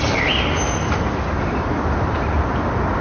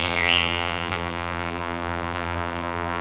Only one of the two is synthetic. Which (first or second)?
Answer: second